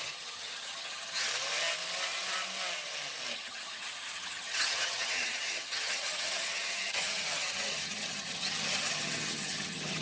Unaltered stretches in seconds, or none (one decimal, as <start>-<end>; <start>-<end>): 1.3-3.3